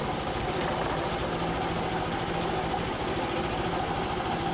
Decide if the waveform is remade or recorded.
recorded